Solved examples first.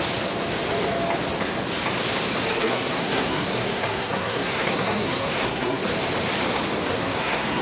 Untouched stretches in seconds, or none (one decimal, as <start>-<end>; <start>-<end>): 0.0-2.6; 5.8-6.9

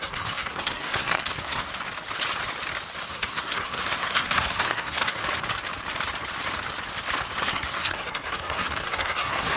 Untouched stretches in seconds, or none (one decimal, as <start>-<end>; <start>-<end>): 1.7-3.1; 5.2-7.4

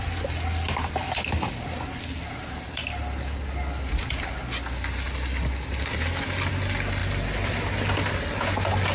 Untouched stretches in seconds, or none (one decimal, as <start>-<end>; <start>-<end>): 0.0-8.9

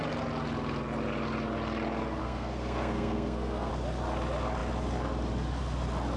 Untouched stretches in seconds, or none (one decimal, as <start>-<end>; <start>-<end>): 0.0-2.2; 3.7-6.2